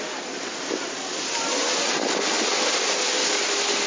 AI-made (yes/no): no